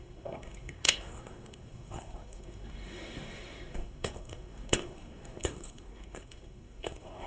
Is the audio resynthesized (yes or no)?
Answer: yes